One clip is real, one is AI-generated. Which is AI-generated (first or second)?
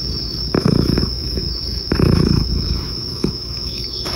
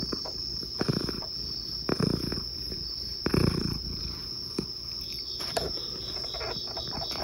first